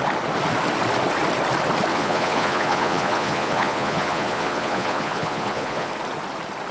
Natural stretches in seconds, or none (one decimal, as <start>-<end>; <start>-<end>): 0.0-1.9; 5.9-6.7